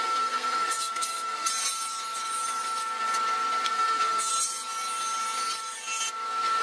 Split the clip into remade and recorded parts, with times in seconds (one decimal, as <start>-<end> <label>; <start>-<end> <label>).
0.0-1.5 remade; 1.5-3.7 recorded; 3.7-4.3 remade; 4.3-6.6 recorded